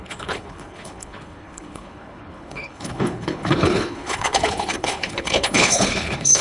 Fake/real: fake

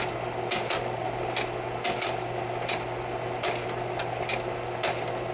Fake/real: real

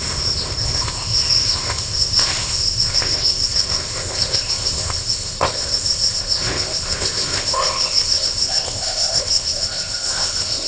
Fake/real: fake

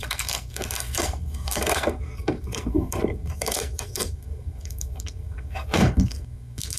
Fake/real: fake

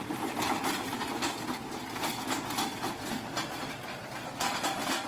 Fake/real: fake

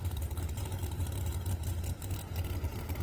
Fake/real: fake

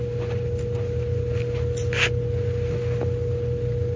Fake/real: real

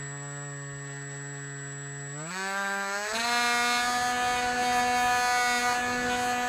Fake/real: real